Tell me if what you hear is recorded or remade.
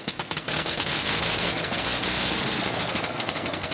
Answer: remade